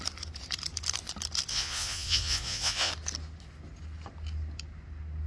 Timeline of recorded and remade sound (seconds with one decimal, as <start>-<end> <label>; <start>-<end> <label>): 0.0-1.5 recorded; 1.5-2.9 remade; 2.9-5.3 recorded